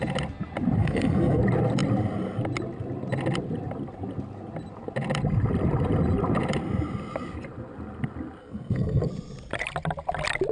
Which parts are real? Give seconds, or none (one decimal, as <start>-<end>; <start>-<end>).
0.0-0.8; 1.4-8.4; 9.1-10.5